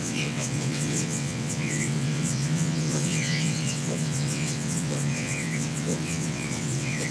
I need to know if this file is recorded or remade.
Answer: remade